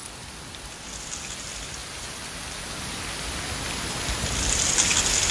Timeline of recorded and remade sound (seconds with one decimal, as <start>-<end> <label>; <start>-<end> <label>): 0.0-5.3 recorded